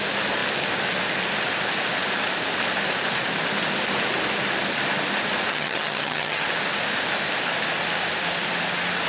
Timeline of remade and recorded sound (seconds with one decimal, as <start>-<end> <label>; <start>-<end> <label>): 0.0-5.5 recorded; 5.5-6.4 remade; 6.4-9.1 recorded